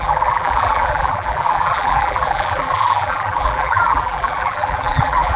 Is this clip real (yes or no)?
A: no